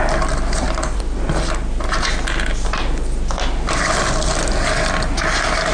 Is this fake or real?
real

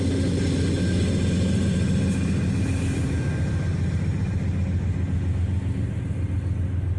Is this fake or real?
real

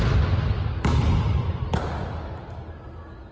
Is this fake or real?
real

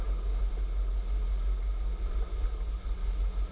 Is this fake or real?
real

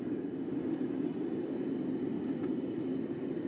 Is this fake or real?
real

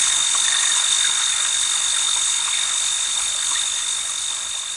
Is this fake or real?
fake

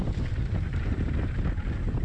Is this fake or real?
real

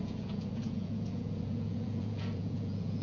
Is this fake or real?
fake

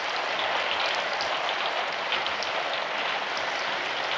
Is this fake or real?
real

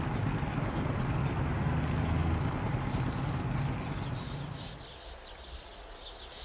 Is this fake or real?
real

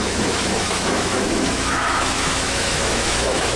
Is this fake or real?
fake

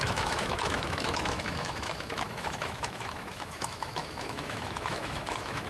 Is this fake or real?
fake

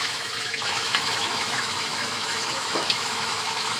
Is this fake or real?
fake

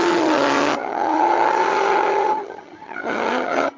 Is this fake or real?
fake